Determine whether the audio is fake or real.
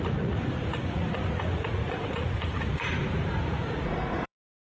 fake